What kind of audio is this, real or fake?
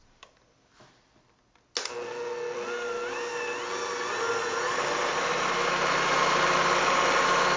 real